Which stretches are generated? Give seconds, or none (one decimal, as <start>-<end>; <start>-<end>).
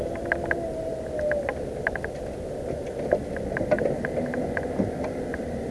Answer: none